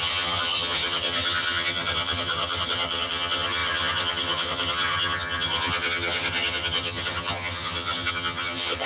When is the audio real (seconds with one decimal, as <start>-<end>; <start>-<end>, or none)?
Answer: none